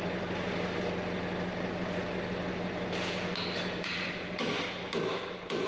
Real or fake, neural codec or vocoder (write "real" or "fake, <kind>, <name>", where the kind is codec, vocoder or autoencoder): real